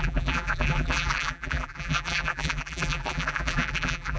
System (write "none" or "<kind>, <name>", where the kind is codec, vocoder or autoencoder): vocoder, BigVGAN v2